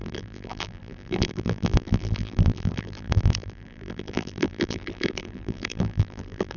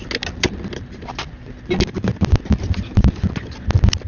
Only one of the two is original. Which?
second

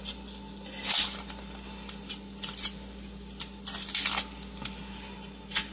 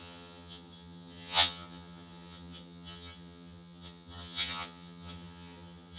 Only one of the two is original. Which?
first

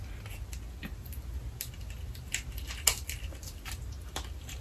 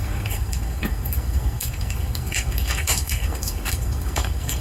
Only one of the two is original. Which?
first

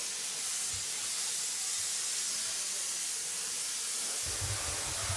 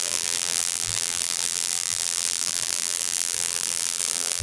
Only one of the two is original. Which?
first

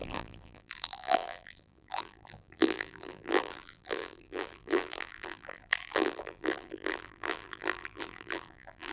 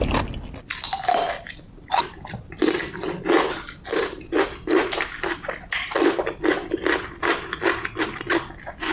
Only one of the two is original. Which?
second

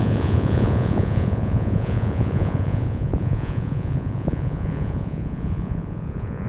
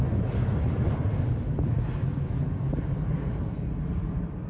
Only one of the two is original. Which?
second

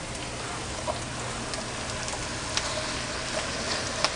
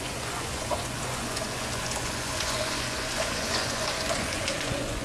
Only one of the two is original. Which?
first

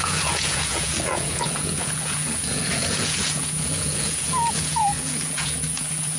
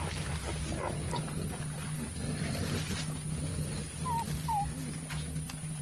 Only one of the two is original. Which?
second